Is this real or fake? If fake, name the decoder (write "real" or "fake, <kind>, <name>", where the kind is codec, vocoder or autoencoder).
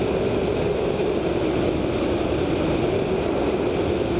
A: real